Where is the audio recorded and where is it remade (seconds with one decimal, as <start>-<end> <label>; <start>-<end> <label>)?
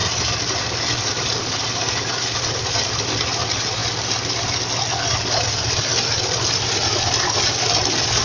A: 0.0-8.2 recorded